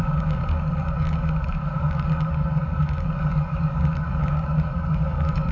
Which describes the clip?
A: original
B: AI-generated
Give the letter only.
B